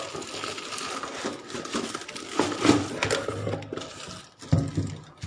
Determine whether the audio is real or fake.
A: real